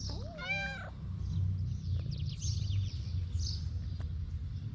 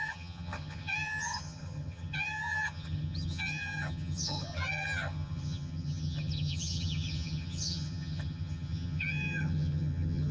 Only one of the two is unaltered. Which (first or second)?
first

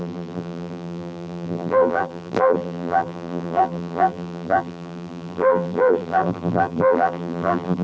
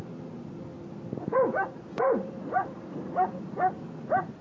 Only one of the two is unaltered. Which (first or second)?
second